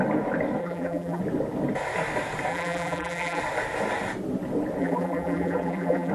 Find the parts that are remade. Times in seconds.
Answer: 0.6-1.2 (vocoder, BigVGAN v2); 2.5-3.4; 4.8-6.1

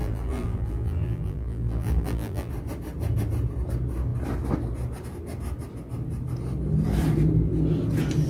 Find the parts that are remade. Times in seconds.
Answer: 0.0-2.5 (vocoder, BigVGAN v2)

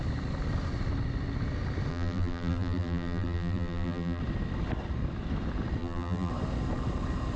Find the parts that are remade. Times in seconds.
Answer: 1.9-4.2 (vocoder, BigVGAN v2); 5.8-6.3